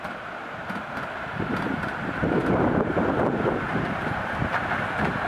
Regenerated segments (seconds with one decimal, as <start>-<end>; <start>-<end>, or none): 0.0-5.3